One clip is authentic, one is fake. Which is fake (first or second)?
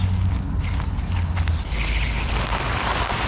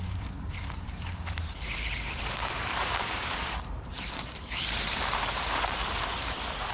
second